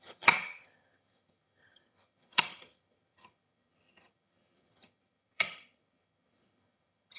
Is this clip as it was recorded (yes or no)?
no